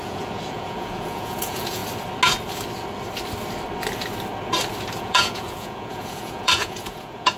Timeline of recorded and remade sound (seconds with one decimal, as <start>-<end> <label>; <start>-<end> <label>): 0.0-1.8 remade; 1.8-5.0 recorded; 5.0-7.4 remade